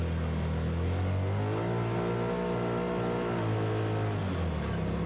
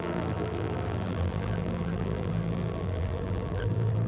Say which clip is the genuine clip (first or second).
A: first